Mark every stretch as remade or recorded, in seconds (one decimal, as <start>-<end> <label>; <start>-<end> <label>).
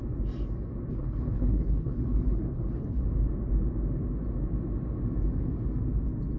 0.0-0.9 recorded; 0.9-3.0 remade; 3.0-6.4 recorded